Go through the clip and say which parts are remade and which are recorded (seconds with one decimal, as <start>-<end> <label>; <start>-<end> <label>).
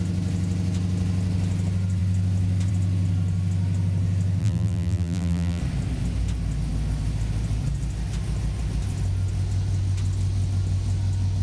0.0-4.4 recorded; 4.4-5.6 remade; 5.6-11.4 recorded